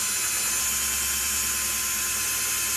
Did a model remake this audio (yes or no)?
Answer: no